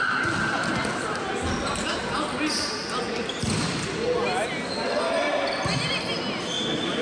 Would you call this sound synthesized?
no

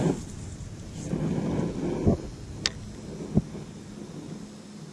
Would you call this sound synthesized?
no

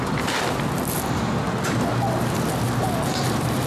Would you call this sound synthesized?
no